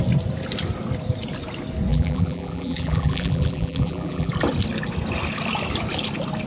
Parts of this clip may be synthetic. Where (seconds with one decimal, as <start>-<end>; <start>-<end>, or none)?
1.9-4.3